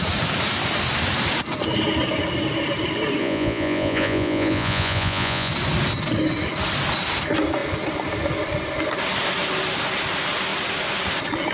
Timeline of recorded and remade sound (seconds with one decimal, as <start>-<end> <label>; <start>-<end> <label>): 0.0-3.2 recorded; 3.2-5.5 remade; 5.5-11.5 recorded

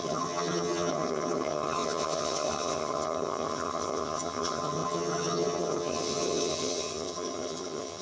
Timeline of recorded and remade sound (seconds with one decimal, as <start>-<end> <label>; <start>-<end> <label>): 0.0-8.0 remade

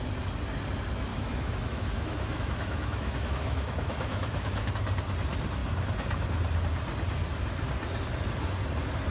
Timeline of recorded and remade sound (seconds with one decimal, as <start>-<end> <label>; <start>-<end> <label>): 0.0-1.1 recorded; 1.1-4.7 remade; 4.7-9.1 recorded

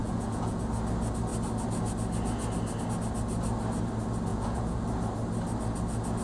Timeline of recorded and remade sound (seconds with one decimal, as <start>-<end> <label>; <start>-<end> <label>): 0.0-0.6 remade; 0.6-4.3 recorded; 4.3-4.8 remade; 4.8-6.2 recorded